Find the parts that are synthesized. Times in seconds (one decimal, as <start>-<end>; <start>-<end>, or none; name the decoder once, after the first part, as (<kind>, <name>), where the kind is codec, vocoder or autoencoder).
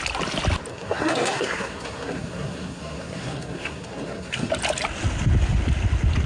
0.7-4.5 (codec, SNAC)